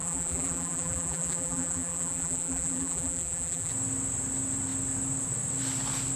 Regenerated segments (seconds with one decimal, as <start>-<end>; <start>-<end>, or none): 0.0-3.7